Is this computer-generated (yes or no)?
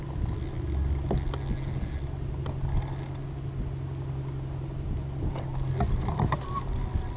no